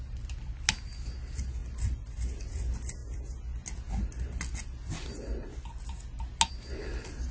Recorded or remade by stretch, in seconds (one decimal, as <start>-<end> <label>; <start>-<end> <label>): 0.0-7.3 recorded